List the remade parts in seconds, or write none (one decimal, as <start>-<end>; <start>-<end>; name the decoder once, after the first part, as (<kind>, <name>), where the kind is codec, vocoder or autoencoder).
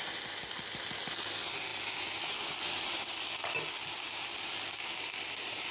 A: none